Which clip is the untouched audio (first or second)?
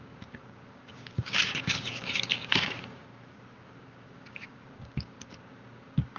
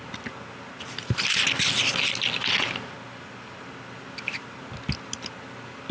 second